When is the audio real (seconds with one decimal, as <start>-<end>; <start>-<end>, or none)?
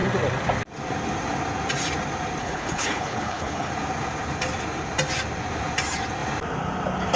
0.0-2.4; 3.7-7.2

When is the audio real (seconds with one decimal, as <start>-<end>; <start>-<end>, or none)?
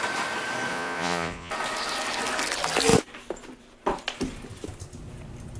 0.0-0.7; 1.5-5.6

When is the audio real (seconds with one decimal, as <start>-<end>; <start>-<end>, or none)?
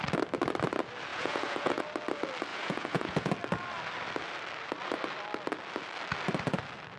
0.0-1.1; 1.8-2.5; 3.3-7.0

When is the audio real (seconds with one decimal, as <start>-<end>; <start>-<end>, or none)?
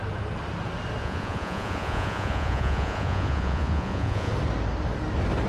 0.0-1.0; 4.3-5.5